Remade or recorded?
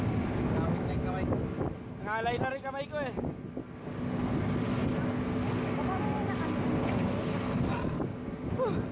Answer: recorded